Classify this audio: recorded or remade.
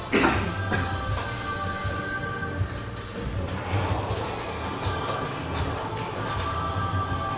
recorded